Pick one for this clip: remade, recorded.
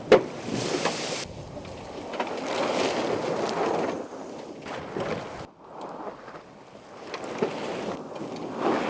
recorded